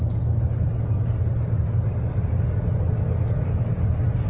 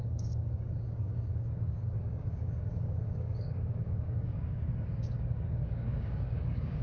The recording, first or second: first